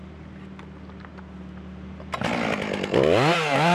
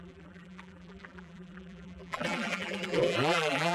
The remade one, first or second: second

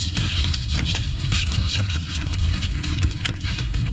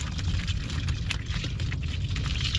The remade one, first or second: first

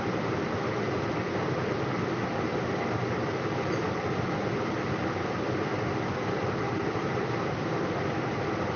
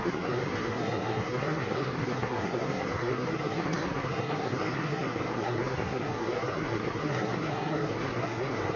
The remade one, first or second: second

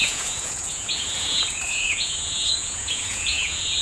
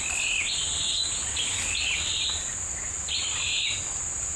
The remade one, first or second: first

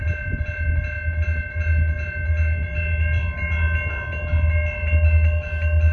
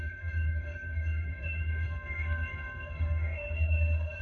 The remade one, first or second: second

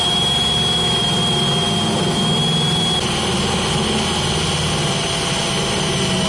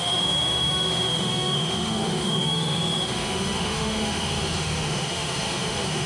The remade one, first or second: second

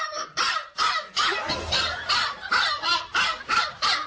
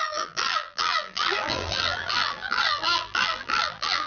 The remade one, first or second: second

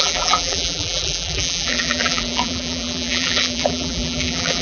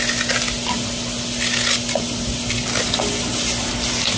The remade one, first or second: first